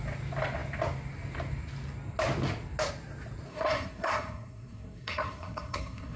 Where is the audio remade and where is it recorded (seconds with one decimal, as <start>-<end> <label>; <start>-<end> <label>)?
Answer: 0.0-3.5 recorded; 3.5-6.2 remade